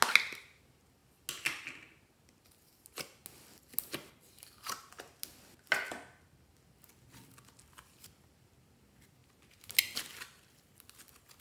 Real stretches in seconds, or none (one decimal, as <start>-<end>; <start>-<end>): 0.0-11.4

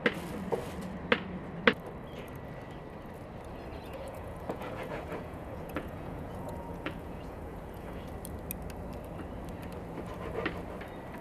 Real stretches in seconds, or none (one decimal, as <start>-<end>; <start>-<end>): 0.0-3.7; 8.1-11.2

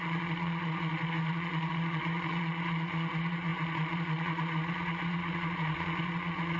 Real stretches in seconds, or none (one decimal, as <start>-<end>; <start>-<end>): none

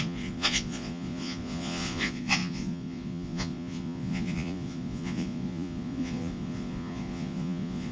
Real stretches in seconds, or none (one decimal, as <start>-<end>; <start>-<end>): none